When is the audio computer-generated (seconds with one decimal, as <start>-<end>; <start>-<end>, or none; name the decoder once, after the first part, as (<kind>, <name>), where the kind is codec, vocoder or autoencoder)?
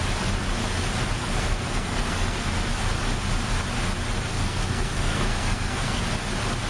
1.2-2.7 (codec, SNAC); 4.3-6.0